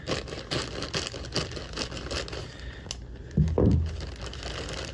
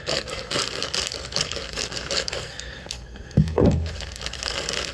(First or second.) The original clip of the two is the first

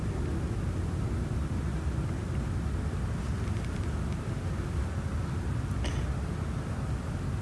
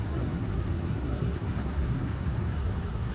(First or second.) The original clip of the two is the first